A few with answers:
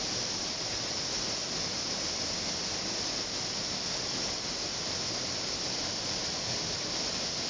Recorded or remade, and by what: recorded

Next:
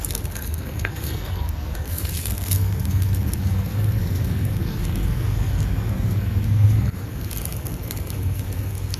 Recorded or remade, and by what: remade, codec, SNAC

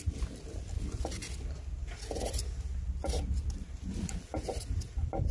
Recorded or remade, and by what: recorded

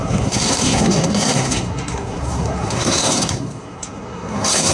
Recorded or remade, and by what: remade, codec, SNAC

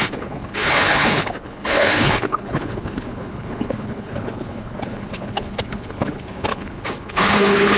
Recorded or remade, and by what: remade, codec, HILCodec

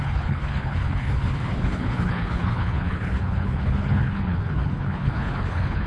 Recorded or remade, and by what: remade, codec, HILCodec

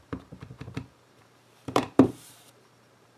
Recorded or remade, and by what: remade, vocoder, BigVGAN v2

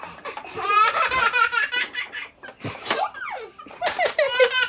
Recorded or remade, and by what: remade, vocoder, BigVGAN v2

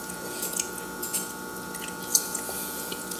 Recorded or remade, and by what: remade, vocoder, Vocos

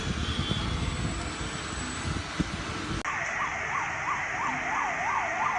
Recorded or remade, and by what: recorded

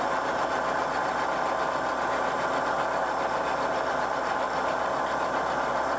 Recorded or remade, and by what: recorded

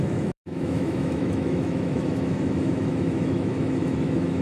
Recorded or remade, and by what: remade, autoencoder, DAC-VAE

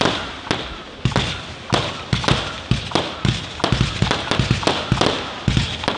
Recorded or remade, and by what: recorded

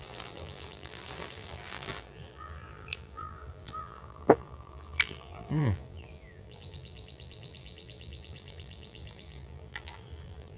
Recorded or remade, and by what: remade, vocoder, BigVGAN v2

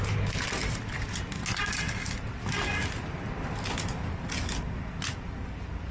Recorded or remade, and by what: recorded